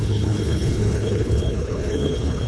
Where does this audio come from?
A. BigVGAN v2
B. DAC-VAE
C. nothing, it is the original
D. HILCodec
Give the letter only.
D